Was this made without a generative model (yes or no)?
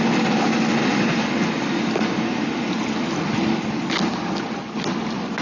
yes